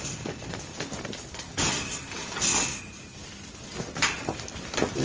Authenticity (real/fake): real